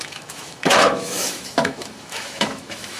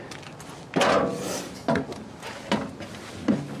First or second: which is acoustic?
second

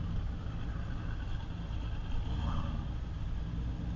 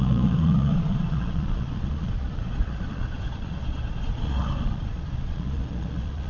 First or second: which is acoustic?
first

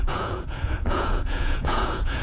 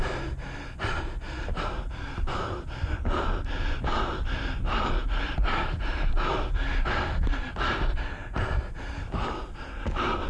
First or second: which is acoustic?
second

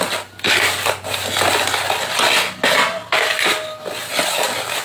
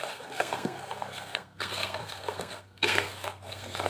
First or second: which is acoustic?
first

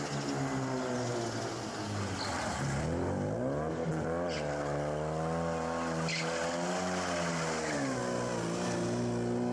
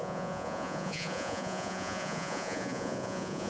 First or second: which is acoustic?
first